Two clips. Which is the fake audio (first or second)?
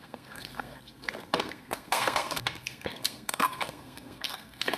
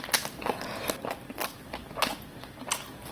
first